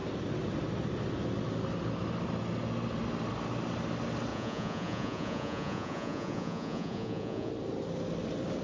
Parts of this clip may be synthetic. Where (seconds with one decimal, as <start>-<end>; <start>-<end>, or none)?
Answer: 4.3-7.5